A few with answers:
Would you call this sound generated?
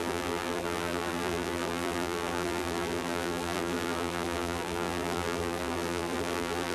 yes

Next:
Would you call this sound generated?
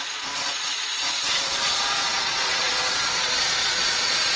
yes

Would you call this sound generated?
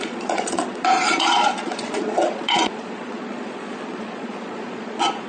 yes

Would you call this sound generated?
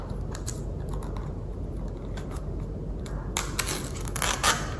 no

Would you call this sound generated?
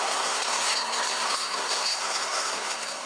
yes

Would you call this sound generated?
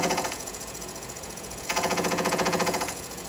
yes